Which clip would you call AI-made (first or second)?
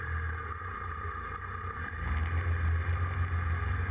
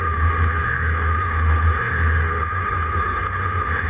second